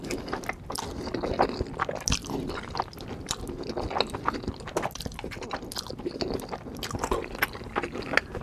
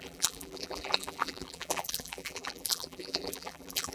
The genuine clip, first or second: first